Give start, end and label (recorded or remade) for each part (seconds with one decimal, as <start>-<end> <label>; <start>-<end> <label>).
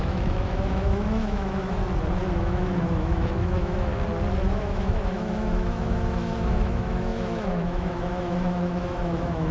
0.0-1.8 remade; 1.8-2.4 recorded; 2.4-3.9 remade; 3.9-4.5 recorded; 4.5-9.5 remade